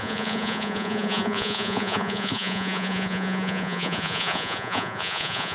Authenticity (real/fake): fake